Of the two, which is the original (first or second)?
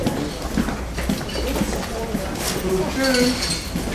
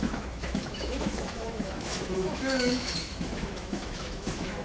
first